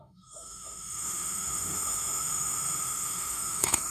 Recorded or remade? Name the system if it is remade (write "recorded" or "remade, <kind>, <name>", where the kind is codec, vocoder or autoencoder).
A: remade, autoencoder, DAC-VAE